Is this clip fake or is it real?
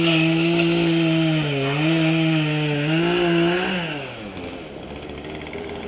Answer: real